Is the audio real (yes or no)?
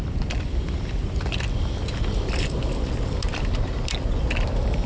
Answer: yes